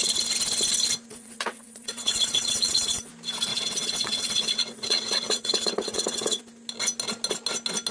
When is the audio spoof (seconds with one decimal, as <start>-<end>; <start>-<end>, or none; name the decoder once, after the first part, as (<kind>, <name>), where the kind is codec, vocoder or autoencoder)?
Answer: 1.1-3.1 (vocoder, WaveNeXt); 3.5-6.4